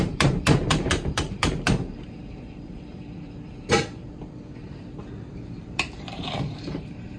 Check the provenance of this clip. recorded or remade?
remade